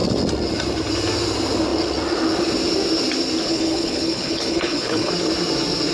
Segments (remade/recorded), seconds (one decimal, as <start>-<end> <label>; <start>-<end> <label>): 0.0-3.5 recorded; 3.5-5.1 remade; 5.1-5.9 recorded